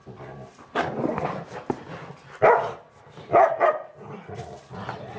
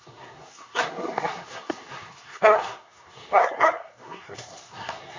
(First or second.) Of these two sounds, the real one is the first